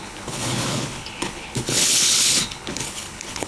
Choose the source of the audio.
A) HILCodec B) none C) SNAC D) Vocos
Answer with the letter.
A